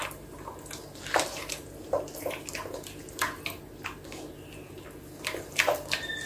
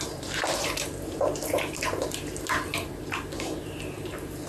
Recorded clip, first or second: first